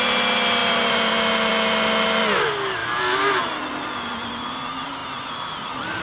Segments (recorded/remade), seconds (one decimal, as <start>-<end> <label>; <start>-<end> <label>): 0.0-0.6 recorded; 0.6-1.1 remade; 1.1-2.8 recorded; 2.8-3.6 remade; 3.6-6.0 recorded